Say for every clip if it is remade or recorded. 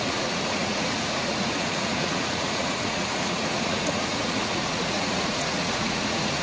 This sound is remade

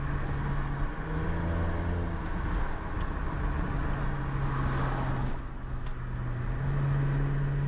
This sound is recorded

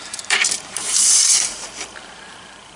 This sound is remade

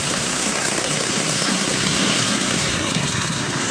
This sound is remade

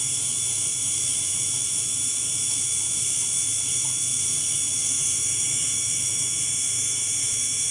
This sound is remade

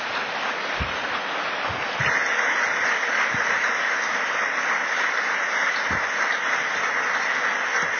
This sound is recorded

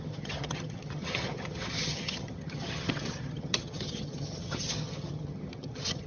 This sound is remade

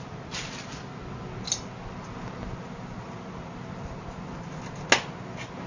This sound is recorded